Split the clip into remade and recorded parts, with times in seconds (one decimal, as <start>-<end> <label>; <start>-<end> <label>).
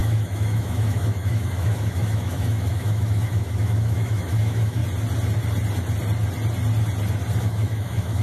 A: 0.0-4.8 remade; 4.8-7.4 recorded; 7.4-8.2 remade